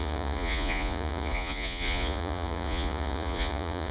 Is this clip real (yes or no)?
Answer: no